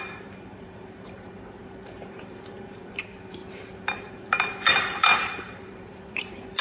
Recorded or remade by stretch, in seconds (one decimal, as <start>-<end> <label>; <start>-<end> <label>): 0.0-3.4 remade; 3.4-4.1 recorded; 4.1-6.6 remade